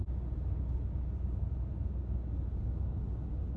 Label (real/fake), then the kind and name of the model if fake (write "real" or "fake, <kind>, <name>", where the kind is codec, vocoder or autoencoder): real